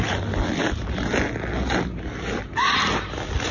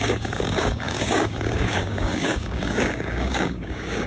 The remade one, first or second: second